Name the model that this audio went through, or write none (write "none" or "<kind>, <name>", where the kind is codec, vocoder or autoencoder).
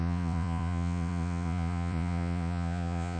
vocoder, Vocos